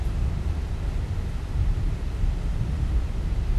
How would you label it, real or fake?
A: real